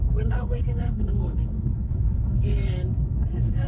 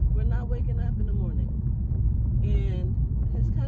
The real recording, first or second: second